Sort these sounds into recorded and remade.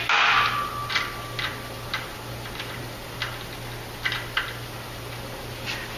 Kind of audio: recorded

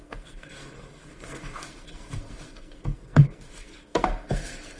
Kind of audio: remade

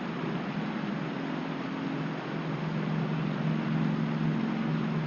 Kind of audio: recorded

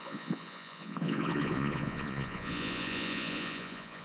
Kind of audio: remade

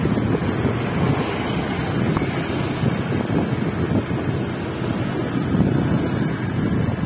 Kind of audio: recorded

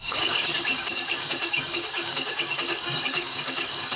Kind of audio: remade